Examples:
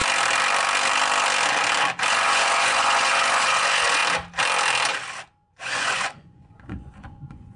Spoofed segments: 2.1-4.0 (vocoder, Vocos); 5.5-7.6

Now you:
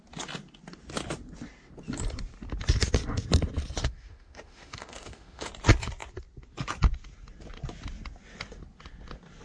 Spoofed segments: 3.8-5.5 (autoencoder, DAC-VAE)

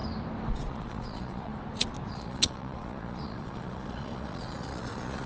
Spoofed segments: 0.5-1.5 (vocoder, Vocos); 2.1-5.3

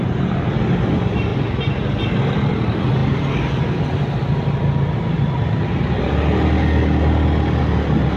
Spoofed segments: none

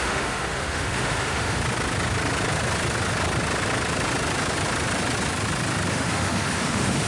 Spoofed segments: 0.0-1.6 (autoencoder, DAC-VAE); 5.9-7.1

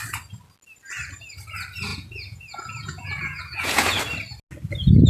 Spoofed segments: 1.9-4.0 (vocoder, Vocos)

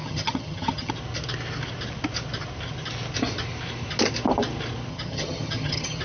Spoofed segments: 0.0-0.9 (vocoder, HiFi-GAN); 4.9-6.0